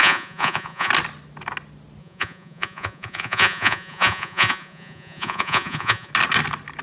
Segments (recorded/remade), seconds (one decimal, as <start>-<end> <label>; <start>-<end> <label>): 0.0-0.9 remade; 0.9-2.0 recorded; 2.0-6.1 remade; 6.1-6.8 recorded